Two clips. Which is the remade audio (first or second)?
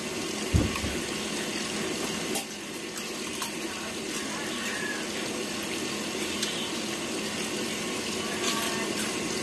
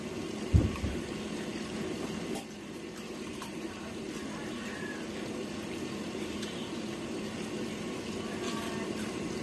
second